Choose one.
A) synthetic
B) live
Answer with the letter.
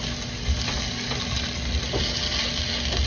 B